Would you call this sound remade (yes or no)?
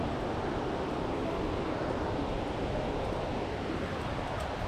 yes